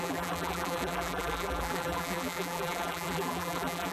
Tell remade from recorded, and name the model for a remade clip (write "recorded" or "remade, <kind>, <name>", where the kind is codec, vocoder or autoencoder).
remade, vocoder, BigVGAN v2